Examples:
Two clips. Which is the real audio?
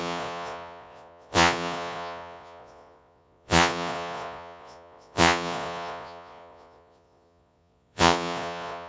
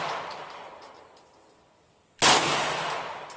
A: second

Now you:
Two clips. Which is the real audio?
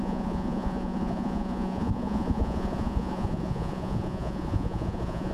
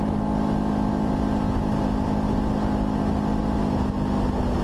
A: second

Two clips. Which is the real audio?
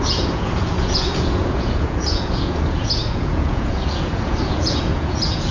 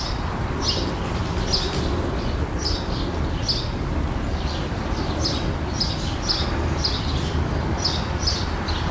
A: second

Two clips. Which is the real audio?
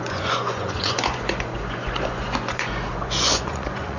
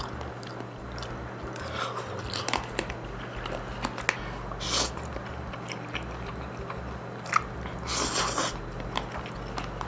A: second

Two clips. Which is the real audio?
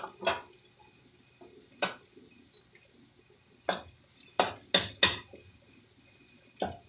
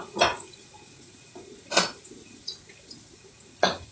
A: first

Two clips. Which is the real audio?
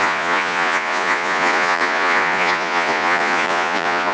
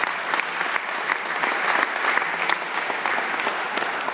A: second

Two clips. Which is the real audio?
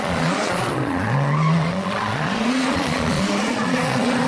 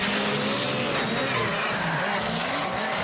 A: second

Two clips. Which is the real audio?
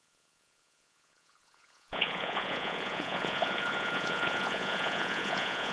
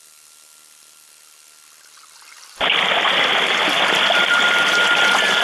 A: second